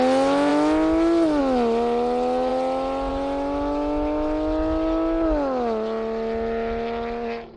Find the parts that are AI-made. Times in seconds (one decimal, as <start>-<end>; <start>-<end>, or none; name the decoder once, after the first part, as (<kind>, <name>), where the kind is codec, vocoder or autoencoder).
none

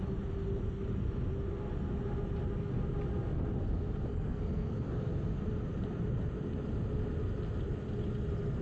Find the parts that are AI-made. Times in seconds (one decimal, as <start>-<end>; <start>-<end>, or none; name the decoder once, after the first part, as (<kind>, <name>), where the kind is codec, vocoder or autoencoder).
4.1-4.9 (codec, SNAC)

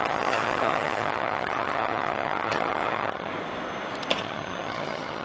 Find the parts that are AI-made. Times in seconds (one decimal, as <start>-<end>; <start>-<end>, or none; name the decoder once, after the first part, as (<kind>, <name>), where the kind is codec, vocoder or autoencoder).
0.0-3.3 (vocoder, HiFi-GAN); 4.2-5.2